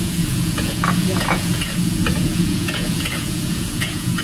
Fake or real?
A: fake